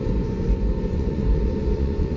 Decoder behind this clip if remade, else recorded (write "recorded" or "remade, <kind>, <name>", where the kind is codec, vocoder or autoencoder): remade, vocoder, Vocos